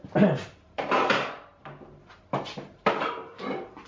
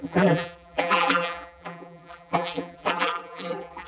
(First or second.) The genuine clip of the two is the first